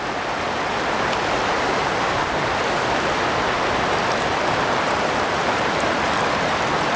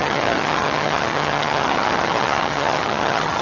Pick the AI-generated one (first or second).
second